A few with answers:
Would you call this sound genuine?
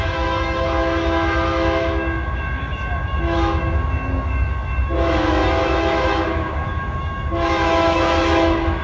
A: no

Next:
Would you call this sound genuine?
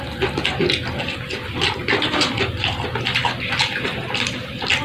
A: yes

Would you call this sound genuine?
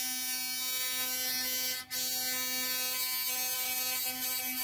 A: yes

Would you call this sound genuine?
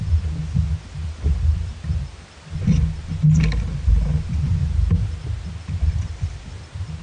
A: yes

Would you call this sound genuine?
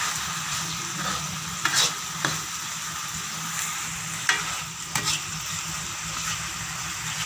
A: yes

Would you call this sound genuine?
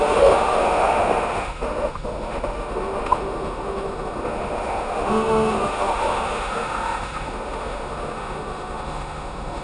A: no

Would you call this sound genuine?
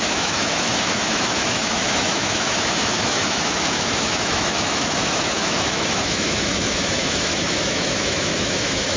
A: no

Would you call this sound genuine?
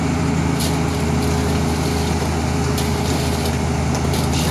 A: yes